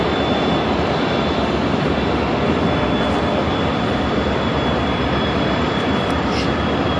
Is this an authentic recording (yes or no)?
yes